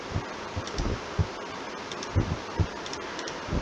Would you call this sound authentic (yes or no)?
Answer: yes